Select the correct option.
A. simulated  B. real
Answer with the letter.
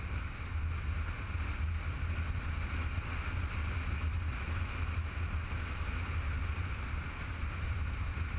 B